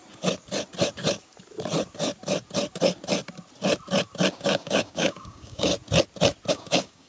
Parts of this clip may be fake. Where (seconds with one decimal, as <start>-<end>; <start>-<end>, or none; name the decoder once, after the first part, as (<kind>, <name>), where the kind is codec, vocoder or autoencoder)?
4.3-5.7 (codec, DAC); 6.5-7.1